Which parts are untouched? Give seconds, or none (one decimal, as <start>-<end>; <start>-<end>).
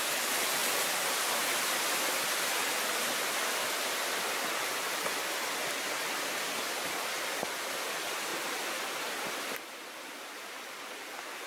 0.0-11.5